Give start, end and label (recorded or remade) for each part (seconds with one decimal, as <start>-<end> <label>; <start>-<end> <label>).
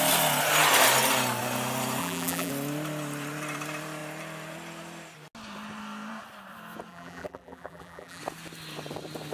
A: 0.0-2.0 recorded; 2.0-2.5 remade; 2.5-6.9 recorded; 6.9-8.2 remade; 8.2-9.3 recorded